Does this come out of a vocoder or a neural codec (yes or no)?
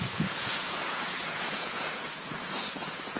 yes